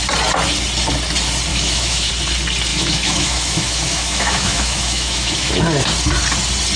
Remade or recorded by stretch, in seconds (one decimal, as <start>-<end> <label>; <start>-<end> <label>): 0.0-1.5 recorded; 1.5-2.1 remade; 2.1-2.7 recorded; 2.7-5.5 remade; 5.5-6.8 recorded